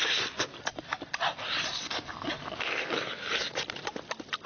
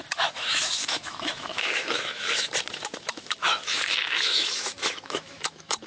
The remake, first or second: second